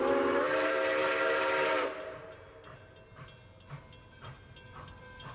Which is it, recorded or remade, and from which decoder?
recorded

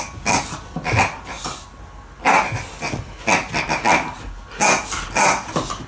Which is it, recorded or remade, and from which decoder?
recorded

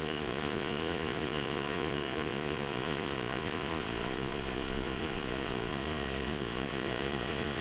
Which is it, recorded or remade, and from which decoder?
remade, vocoder, Vocos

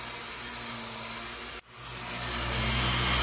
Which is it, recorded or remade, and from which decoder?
recorded